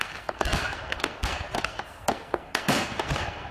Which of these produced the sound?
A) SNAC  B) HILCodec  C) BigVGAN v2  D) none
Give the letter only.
A